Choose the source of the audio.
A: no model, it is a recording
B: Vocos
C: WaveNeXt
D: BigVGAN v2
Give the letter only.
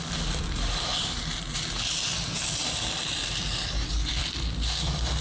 D